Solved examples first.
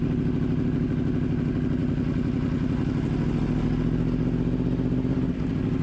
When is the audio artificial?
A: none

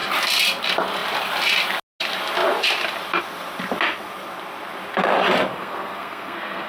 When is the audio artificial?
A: 5.5-6.7 (codec, SNAC)

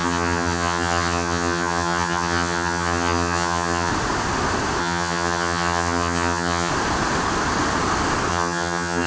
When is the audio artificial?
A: 0.0-3.9 (vocoder, HiFi-GAN); 4.8-6.7; 8.3-9.1

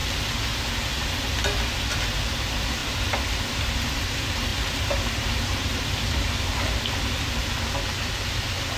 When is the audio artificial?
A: 2.8-4.0 (vocoder, BigVGAN v2); 4.5-8.1